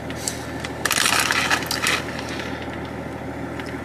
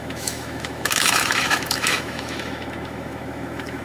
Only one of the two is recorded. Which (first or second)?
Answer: first